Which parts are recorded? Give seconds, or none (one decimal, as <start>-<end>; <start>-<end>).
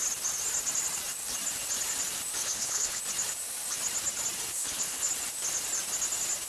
0.0-2.4; 3.0-4.5; 5.1-6.5